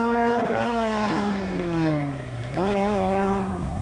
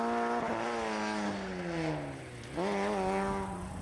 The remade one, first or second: first